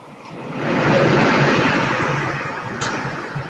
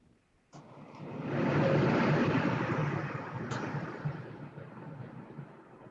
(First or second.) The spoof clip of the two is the first